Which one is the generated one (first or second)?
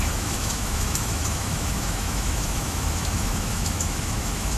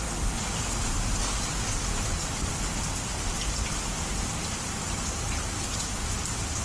first